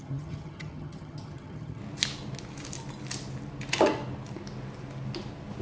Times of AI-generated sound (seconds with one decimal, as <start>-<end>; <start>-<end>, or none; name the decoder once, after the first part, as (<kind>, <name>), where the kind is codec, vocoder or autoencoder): 0.0-1.8 (vocoder, HiFi-GAN)